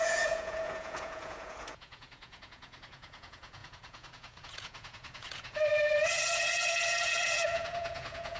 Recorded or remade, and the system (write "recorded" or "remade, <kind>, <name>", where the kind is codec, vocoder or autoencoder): remade, vocoder, Vocos